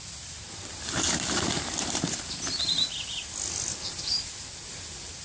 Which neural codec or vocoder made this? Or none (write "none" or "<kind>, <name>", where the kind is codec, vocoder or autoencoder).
vocoder, BigVGAN v2